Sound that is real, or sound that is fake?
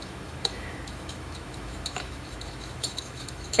fake